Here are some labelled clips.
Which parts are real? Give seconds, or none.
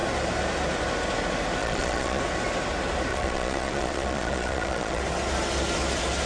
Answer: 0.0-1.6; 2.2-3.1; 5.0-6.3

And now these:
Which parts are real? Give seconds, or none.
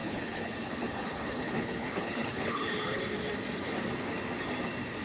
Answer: 3.0-5.0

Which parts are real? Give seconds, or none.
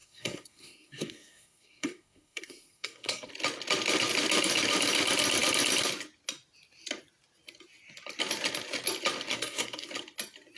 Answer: 3.3-9.3; 9.9-10.6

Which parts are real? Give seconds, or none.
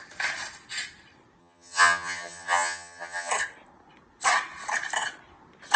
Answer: 0.0-1.4; 3.3-5.8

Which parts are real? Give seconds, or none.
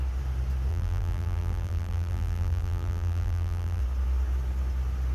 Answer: 0.0-0.7; 3.8-5.1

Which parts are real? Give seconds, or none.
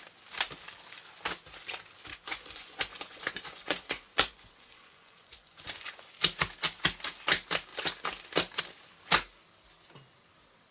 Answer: 0.0-2.1; 6.1-10.7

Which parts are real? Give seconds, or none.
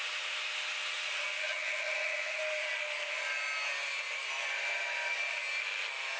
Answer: 0.0-1.4; 2.4-6.2